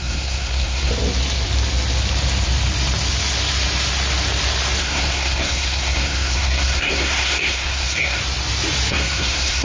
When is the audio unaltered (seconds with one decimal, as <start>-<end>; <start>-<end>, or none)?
0.9-4.8; 8.2-8.9